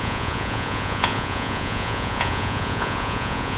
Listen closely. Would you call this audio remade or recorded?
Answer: remade